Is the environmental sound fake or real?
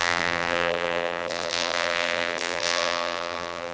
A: fake